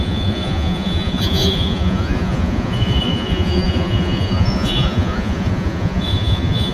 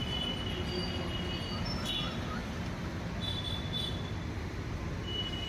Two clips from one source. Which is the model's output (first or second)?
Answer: first